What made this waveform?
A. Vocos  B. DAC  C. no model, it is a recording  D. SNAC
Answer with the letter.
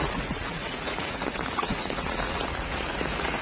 A